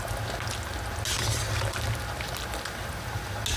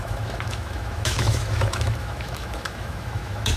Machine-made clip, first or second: second